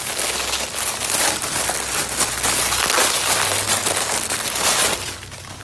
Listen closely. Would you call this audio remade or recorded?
recorded